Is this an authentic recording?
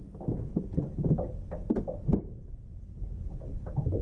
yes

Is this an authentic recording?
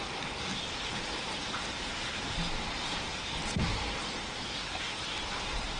yes